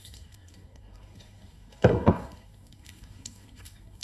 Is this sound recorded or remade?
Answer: remade